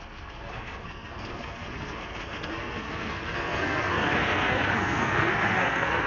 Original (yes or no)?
no